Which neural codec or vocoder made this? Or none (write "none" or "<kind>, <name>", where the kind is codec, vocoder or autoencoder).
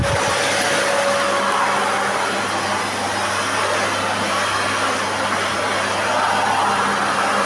none